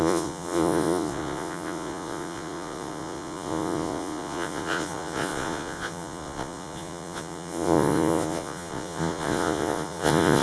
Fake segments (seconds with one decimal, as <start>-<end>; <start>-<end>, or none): 0.0-10.4